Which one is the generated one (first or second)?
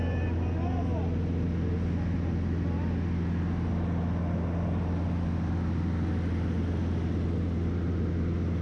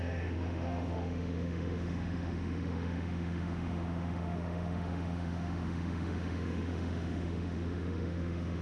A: second